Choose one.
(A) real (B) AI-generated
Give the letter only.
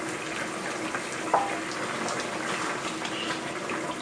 A